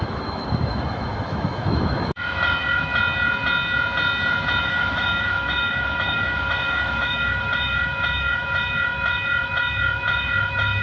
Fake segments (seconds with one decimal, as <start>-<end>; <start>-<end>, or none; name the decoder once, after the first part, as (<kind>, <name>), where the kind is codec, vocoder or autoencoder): 0.0-2.9 (autoencoder, DAC-VAE); 4.6-10.8